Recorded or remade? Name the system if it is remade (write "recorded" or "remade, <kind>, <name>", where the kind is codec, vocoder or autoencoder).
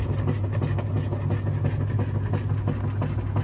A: recorded